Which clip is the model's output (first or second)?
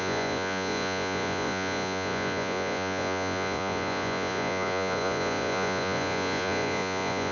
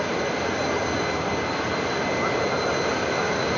first